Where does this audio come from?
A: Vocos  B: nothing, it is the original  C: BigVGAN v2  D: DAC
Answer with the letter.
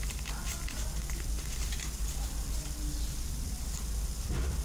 C